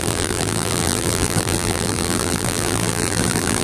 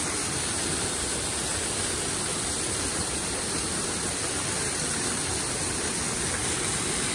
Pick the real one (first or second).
second